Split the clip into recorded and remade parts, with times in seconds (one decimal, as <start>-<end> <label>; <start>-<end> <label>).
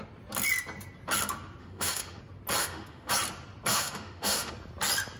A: 0.0-1.6 recorded; 1.6-2.2 remade; 2.2-2.6 recorded; 2.6-3.1 remade; 3.1-3.7 recorded; 3.7-4.5 remade; 4.5-5.2 recorded